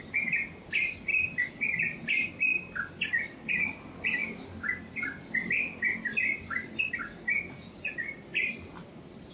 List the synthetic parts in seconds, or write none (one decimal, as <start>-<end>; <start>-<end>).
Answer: 1.1-2.0; 4.2-7.0; 8.3-9.3